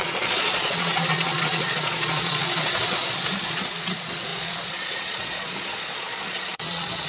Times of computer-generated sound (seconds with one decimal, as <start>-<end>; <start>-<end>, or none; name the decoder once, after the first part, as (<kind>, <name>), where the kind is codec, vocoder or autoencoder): 0.0-7.1 (vocoder, Vocos)